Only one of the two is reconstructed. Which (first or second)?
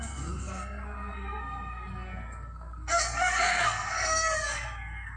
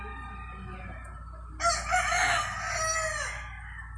first